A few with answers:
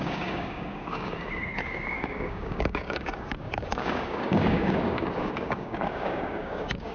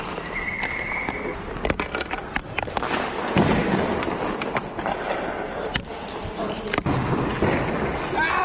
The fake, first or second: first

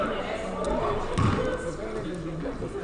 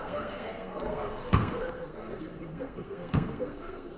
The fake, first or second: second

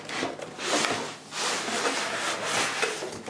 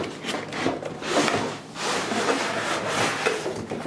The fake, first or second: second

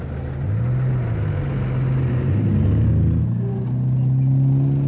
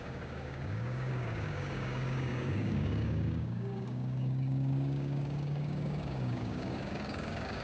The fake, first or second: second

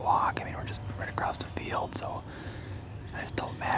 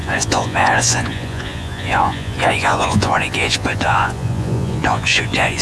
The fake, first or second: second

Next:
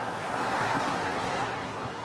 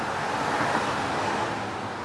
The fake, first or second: first